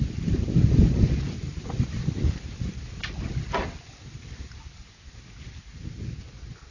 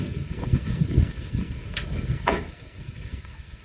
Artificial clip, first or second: second